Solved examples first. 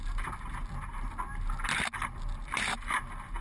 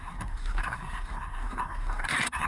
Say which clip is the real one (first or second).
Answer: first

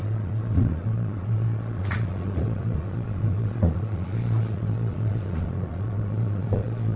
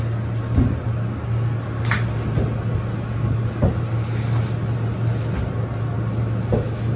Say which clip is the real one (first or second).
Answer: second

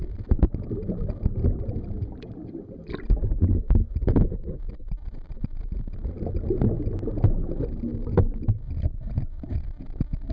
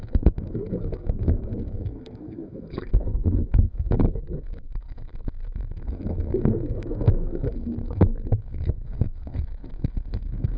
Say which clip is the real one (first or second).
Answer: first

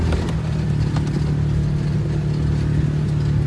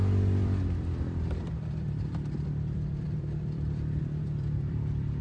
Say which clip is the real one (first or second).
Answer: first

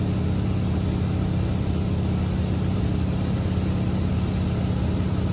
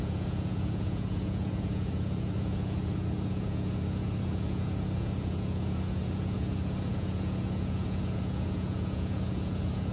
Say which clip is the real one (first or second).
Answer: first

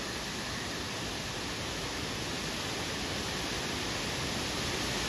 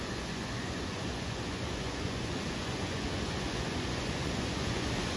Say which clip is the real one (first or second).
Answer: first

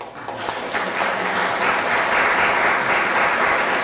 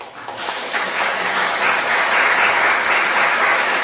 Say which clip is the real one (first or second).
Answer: first